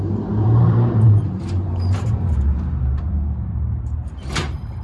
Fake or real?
fake